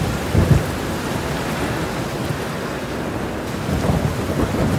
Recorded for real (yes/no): yes